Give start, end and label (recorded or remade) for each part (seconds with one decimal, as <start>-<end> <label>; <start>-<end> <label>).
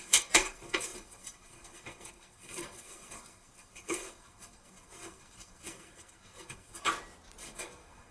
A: 0.0-6.9 remade; 6.9-7.4 recorded; 7.4-8.1 remade